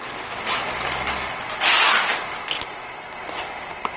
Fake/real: real